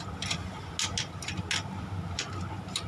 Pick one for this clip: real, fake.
real